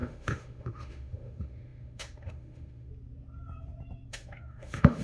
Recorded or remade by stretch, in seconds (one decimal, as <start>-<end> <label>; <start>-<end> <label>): 0.0-2.9 remade; 2.9-4.1 recorded; 4.1-5.0 remade